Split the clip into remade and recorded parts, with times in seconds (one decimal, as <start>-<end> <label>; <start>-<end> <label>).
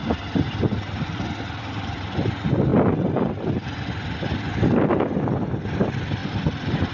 0.0-6.9 remade